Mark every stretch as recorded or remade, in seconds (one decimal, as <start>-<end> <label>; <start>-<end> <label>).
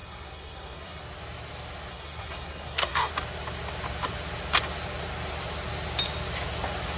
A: 0.0-1.0 remade; 1.0-1.9 recorded; 1.9-3.1 remade; 3.1-7.0 recorded